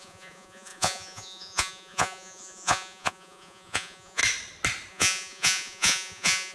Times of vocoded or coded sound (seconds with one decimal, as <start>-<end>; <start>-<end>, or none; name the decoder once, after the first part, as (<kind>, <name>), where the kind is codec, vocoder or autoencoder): 0.0-4.2 (vocoder, Vocos); 4.9-6.5